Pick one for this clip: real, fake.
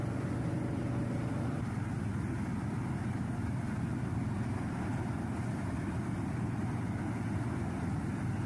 real